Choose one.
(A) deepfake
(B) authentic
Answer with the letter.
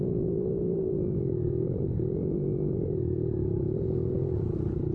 A